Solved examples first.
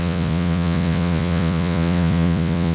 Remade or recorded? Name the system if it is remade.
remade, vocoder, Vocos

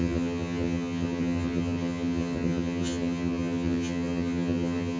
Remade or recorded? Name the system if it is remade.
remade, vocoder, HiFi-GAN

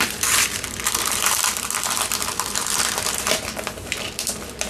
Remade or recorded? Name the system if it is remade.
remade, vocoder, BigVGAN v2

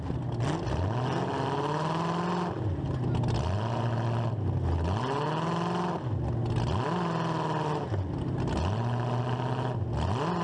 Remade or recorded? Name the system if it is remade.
recorded